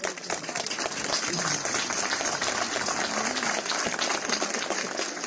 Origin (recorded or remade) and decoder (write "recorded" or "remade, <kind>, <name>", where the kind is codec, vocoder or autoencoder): recorded